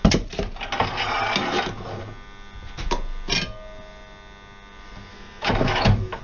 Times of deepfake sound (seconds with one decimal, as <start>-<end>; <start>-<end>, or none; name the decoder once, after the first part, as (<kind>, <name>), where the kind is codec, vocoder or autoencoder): 5.1-6.2 (autoencoder, DAC-VAE)